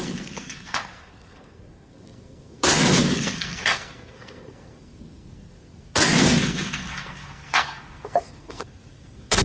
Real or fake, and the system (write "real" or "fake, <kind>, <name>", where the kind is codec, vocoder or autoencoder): fake, codec, SNAC